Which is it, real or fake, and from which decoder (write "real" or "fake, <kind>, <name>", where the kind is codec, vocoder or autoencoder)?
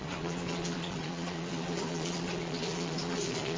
fake, vocoder, Vocos